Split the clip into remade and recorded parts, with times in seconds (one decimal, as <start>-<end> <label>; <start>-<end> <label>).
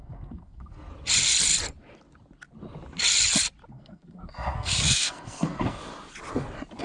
0.0-0.9 remade; 0.9-3.7 recorded; 3.7-5.8 remade; 5.8-6.8 recorded